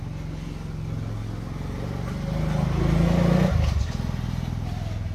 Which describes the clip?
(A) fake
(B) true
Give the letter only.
B